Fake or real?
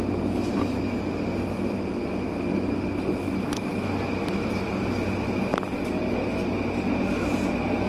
real